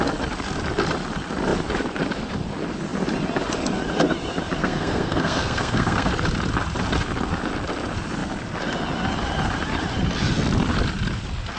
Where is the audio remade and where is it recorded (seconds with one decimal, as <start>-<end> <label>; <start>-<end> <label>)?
0.0-4.6 recorded; 4.6-6.1 remade; 6.1-11.6 recorded